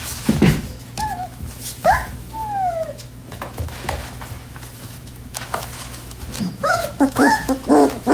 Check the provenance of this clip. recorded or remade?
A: remade